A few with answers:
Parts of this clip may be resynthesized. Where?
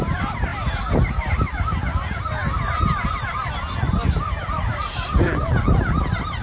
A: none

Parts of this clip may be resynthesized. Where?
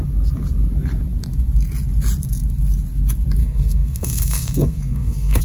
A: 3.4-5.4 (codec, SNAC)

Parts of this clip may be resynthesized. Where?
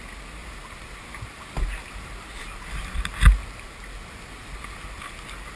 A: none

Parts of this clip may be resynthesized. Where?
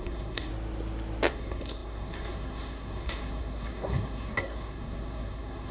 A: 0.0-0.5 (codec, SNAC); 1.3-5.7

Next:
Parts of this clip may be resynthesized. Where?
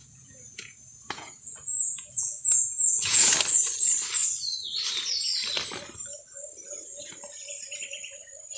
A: 0.0-3.3 (vocoder, Vocos)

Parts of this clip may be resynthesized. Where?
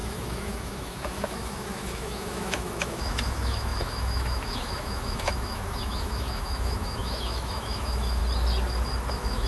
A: 0.0-8.2 (autoencoder, DAC-VAE); 9.1-9.5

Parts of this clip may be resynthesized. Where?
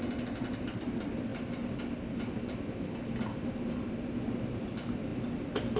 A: none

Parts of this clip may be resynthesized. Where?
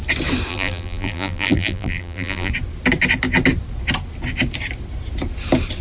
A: 0.5-2.5 (vocoder, BigVGAN v2)